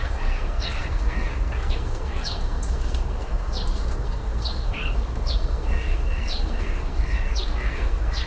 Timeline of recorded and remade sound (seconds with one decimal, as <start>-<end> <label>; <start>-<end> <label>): 0.0-8.3 remade